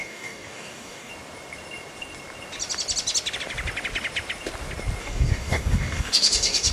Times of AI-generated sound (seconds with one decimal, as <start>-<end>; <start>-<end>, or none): 0.0-1.1; 5.0-6.7